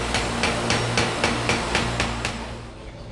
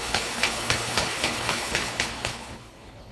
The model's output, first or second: second